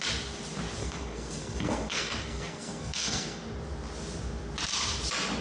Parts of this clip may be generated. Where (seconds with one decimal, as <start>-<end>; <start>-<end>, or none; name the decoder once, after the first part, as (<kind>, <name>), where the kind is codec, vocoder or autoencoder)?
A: 0.8-3.4 (codec, SNAC)